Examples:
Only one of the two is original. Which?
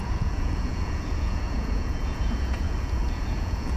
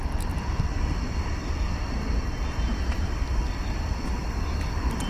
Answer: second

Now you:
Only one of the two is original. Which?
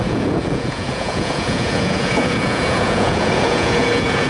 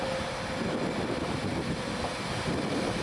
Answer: second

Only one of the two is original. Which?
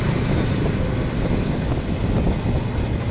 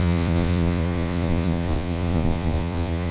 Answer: first